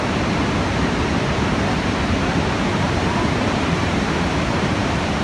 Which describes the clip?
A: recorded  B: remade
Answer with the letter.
B